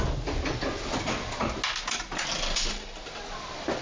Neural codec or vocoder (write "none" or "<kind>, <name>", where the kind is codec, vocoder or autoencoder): none